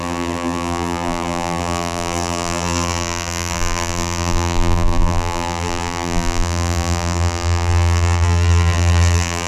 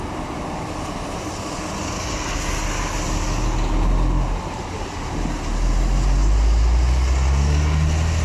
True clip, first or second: second